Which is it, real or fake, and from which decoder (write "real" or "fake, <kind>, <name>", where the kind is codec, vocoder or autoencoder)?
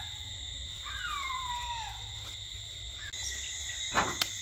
real